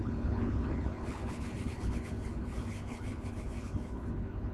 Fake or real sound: fake